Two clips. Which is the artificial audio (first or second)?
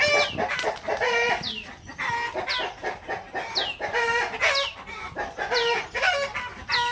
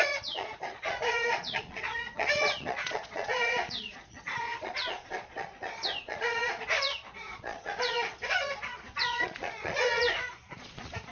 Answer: second